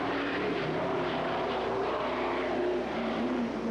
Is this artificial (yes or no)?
yes